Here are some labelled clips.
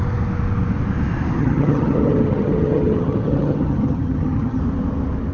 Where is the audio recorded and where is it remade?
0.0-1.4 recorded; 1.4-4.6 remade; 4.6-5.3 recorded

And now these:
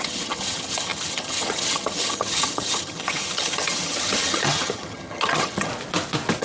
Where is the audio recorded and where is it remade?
0.0-5.7 remade; 5.7-6.4 recorded

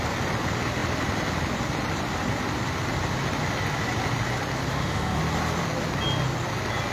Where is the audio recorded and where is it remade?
0.0-4.7 recorded; 4.7-5.2 remade; 5.2-6.9 recorded

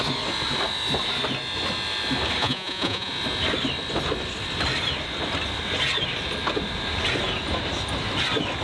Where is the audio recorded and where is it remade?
0.0-2.4 recorded; 2.4-3.1 remade; 3.1-8.6 recorded

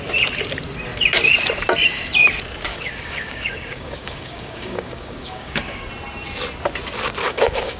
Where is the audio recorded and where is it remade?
0.0-2.7 recorded; 2.7-5.9 remade; 5.9-7.2 recorded; 7.2-7.8 remade